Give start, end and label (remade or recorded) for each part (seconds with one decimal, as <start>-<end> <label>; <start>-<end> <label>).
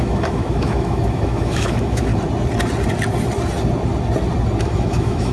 0.0-2.1 remade; 2.1-4.6 recorded; 4.6-5.3 remade